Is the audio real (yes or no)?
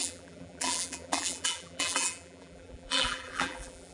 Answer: no